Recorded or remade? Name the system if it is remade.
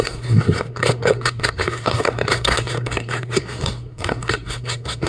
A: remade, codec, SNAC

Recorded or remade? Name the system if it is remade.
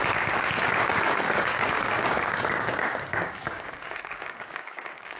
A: remade, codec, DAC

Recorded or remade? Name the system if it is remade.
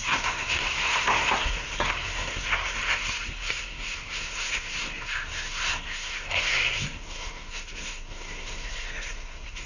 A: remade, codec, SNAC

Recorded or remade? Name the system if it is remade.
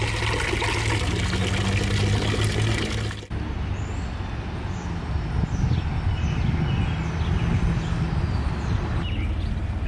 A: recorded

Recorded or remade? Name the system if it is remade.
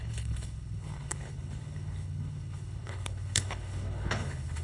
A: remade, codec, HILCodec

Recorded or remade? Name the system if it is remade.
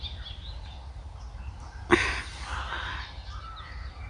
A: recorded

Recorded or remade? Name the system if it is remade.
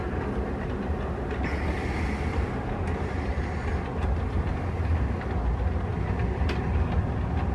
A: recorded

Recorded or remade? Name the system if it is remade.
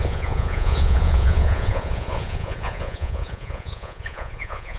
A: remade, vocoder, Vocos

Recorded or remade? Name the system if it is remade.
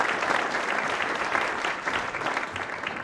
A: remade, vocoder, BigVGAN v2